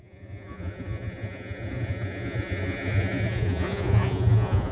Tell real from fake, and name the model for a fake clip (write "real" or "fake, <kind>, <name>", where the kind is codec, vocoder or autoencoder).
fake, vocoder, Vocos